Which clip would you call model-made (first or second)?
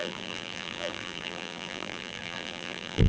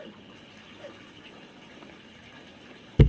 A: first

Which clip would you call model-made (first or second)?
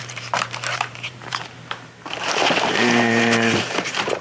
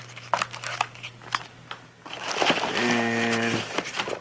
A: first